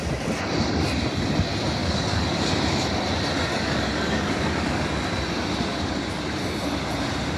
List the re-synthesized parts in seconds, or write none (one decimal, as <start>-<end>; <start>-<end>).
1.8-2.5; 3.5-4.9; 5.7-6.2